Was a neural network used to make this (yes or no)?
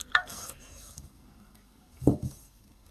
yes